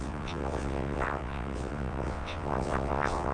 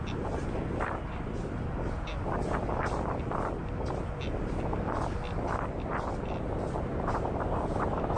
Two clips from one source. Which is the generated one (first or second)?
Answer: first